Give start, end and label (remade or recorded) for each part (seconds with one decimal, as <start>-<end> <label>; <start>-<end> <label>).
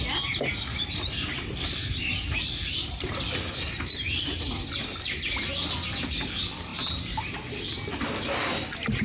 0.0-9.0 recorded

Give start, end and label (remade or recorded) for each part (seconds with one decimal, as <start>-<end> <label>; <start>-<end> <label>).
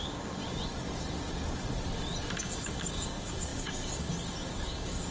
0.0-0.4 remade; 0.4-2.4 recorded; 2.4-5.1 remade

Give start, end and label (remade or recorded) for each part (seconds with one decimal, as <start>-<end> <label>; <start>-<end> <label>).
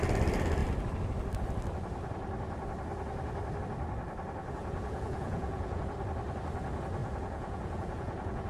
0.0-4.6 recorded; 4.6-5.8 remade; 5.8-7.0 recorded; 7.0-8.5 remade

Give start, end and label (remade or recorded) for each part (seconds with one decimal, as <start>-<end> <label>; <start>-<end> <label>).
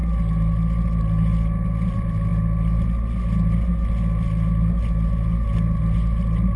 0.0-6.6 recorded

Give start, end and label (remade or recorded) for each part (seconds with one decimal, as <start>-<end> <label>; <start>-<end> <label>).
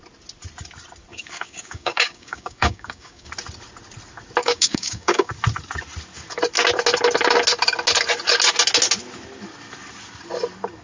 0.0-1.1 recorded; 1.1-3.3 remade; 3.3-4.4 recorded; 4.4-5.3 remade; 5.3-10.8 recorded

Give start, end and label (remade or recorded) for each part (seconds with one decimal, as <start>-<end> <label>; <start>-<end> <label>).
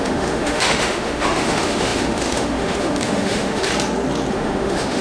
0.0-3.7 remade; 3.7-4.3 recorded; 4.3-5.0 remade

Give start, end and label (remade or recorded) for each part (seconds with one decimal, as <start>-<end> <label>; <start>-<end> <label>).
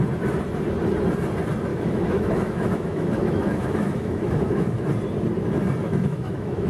0.0-1.7 recorded; 1.7-4.9 remade; 4.9-5.8 recorded; 5.8-6.7 remade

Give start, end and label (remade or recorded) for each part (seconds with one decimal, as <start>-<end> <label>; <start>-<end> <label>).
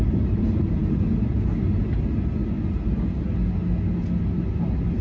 0.0-0.8 remade; 0.8-1.8 recorded; 1.8-2.4 remade; 2.4-4.2 recorded; 4.2-5.0 remade